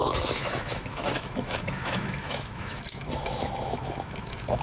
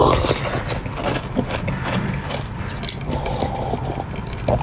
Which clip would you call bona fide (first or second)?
second